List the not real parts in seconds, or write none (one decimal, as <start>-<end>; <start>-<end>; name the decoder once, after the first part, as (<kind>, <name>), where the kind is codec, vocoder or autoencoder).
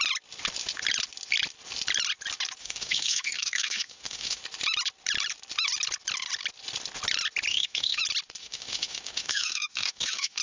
2.6-4.4 (autoencoder, DAC-VAE); 7.5-8.0; 8.4-10.4